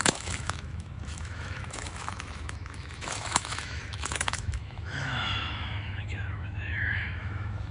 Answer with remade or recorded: remade